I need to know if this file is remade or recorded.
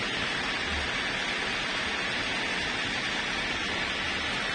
recorded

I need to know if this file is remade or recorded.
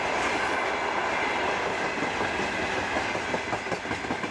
recorded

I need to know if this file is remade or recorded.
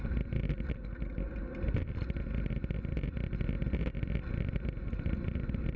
recorded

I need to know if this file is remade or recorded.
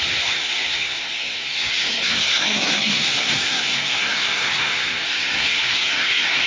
remade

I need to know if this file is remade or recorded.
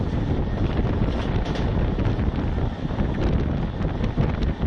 recorded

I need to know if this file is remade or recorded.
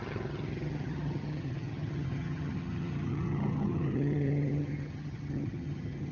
remade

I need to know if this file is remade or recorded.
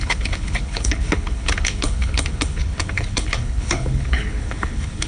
remade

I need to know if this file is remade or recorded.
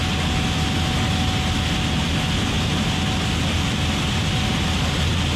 recorded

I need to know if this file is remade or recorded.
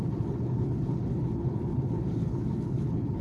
remade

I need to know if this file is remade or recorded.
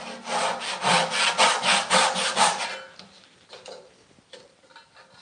recorded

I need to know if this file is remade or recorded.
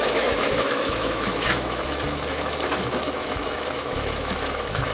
remade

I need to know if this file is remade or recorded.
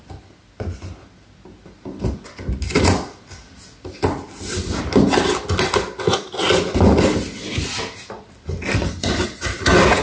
recorded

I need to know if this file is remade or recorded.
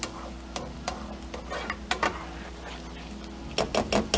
recorded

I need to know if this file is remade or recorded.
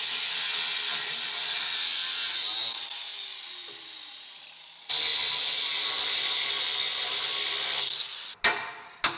recorded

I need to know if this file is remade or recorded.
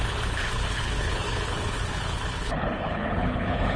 remade